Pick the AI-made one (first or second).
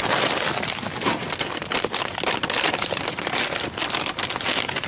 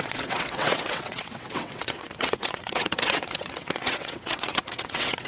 second